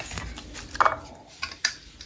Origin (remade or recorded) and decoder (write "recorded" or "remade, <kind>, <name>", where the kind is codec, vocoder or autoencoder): recorded